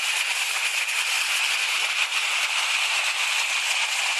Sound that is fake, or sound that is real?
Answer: real